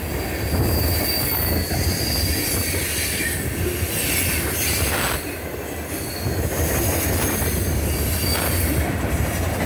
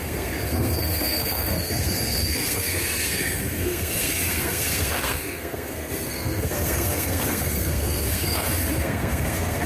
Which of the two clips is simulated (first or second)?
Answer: second